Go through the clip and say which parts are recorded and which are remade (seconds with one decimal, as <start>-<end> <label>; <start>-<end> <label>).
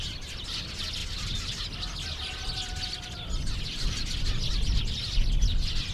0.0-5.9 recorded